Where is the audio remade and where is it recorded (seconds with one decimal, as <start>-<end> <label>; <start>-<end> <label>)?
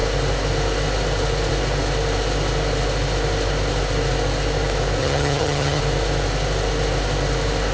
0.0-5.0 recorded; 5.0-5.8 remade; 5.8-7.7 recorded